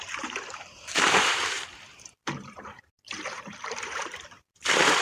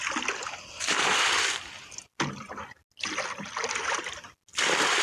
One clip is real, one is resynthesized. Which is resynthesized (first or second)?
first